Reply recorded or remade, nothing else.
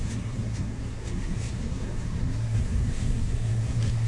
remade